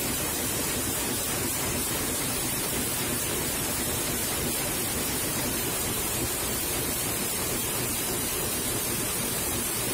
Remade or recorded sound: remade